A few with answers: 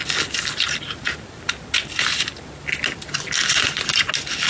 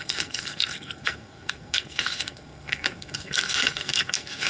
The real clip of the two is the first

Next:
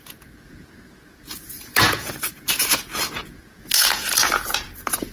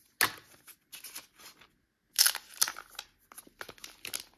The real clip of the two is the second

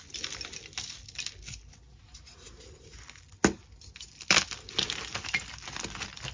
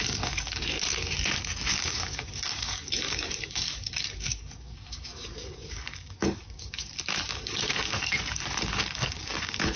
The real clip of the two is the first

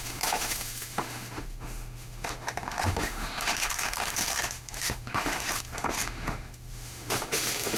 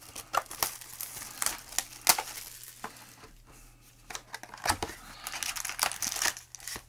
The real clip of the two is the second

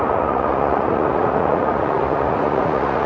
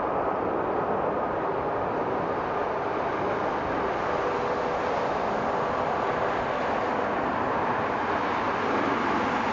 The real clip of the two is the second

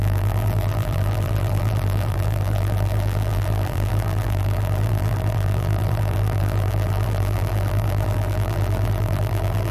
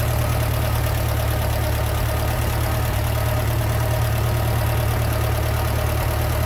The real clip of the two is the second